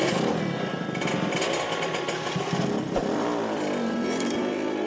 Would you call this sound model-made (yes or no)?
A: no